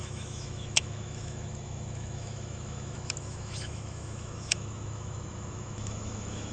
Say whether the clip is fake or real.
fake